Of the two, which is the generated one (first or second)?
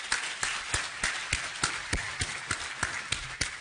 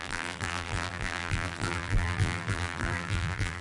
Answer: second